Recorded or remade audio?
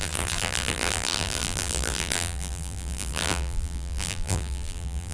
remade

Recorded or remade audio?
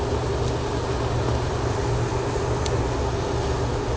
recorded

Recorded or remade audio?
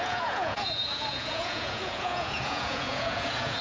remade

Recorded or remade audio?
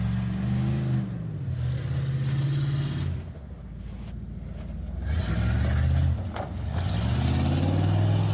recorded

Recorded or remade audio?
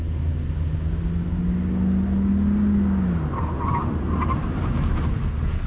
recorded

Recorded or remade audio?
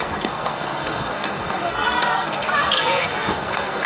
remade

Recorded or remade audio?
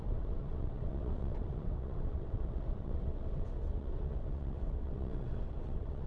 remade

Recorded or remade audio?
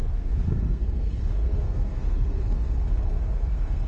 remade